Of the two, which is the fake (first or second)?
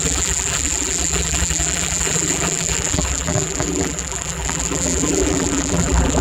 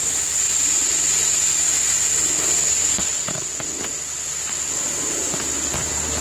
first